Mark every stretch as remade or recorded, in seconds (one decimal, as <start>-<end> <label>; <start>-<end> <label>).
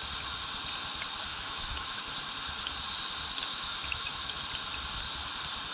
0.0-1.3 recorded; 1.3-2.0 remade; 2.0-3.5 recorded; 3.5-4.4 remade; 4.4-5.7 recorded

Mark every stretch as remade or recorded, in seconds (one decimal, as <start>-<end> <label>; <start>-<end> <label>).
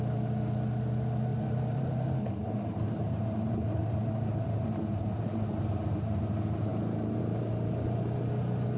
0.0-1.3 recorded; 1.3-6.2 remade; 6.2-8.8 recorded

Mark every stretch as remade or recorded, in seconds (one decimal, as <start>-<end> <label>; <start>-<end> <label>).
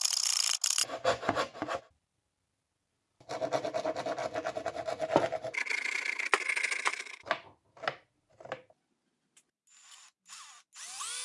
0.0-0.8 recorded; 0.8-1.8 remade; 1.8-11.2 recorded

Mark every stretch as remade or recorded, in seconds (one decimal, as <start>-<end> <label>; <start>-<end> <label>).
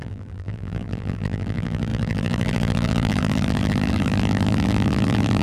0.0-5.4 remade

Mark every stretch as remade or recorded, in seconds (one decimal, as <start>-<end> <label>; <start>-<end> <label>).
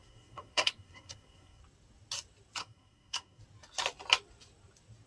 0.0-1.6 remade; 1.6-2.6 recorded; 2.6-3.4 remade; 3.4-5.1 recorded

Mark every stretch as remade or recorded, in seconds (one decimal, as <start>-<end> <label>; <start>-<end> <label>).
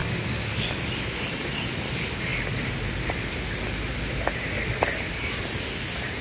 0.0-6.2 recorded